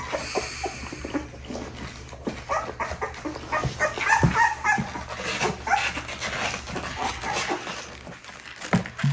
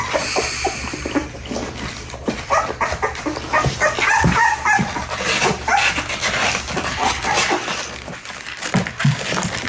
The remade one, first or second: second